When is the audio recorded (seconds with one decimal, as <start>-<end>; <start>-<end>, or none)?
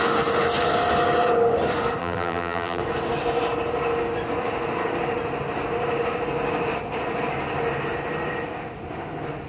0.0-2.0; 2.8-9.5